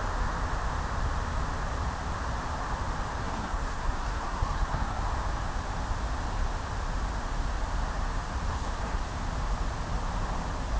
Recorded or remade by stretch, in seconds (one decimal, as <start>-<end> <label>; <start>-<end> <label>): 0.0-3.2 recorded; 3.2-5.0 remade; 5.0-8.5 recorded; 8.5-9.0 remade; 9.0-10.8 recorded